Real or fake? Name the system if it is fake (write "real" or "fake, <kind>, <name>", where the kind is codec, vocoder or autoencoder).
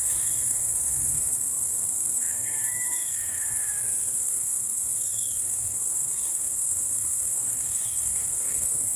fake, codec, SNAC